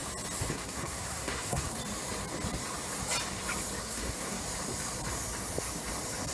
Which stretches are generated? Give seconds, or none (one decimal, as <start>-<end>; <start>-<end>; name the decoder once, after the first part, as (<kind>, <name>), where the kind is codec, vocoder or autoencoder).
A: 0.5-1.8 (codec, SNAC); 3.8-4.4